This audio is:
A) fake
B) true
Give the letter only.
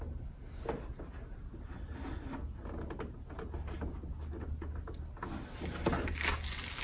B